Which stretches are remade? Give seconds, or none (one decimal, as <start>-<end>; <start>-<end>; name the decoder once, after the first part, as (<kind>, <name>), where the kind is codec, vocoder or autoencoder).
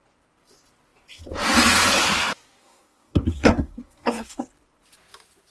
2.6-4.5 (codec, SNAC)